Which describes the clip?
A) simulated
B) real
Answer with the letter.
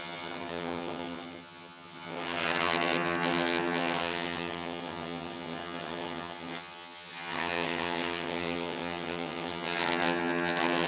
A